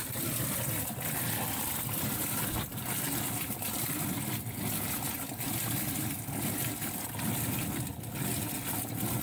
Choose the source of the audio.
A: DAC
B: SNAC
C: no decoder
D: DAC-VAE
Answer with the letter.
C